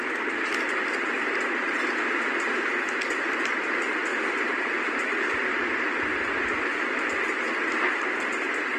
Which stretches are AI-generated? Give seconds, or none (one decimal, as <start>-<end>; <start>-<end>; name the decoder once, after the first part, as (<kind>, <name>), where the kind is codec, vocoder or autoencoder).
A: 0.8-1.3 (vocoder, BigVGAN v2); 4.1-4.8